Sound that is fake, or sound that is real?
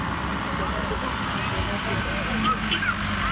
real